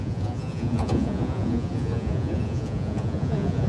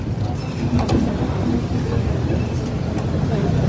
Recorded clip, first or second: second